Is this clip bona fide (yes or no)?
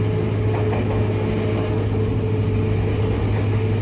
yes